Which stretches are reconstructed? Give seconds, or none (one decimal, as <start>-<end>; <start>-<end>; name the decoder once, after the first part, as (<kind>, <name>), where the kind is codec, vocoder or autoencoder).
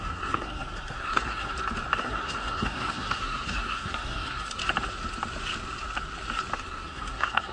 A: 0.0-1.5 (codec, SNAC); 2.0-4.6; 6.6-7.5